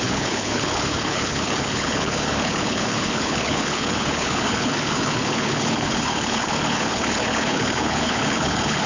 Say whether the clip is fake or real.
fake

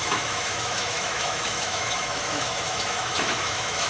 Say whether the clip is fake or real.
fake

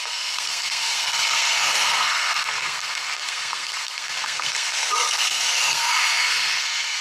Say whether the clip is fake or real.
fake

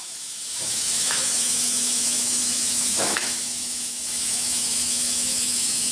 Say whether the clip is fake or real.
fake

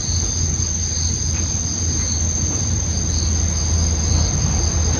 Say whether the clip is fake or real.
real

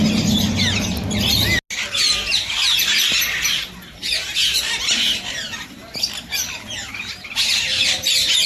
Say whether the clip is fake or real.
real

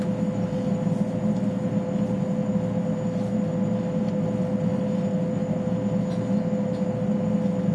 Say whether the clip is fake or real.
real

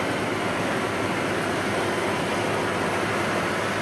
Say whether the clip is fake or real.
real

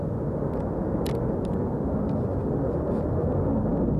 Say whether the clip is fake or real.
real